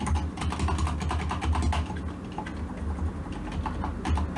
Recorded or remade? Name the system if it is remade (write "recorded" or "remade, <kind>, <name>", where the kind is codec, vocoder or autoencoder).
recorded